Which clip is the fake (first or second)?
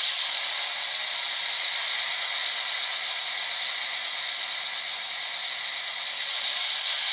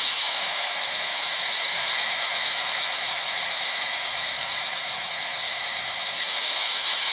second